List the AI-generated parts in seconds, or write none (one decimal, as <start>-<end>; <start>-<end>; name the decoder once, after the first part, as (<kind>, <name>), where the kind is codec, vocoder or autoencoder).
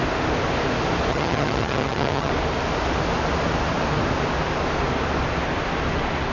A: 1.1-2.3 (vocoder, HiFi-GAN)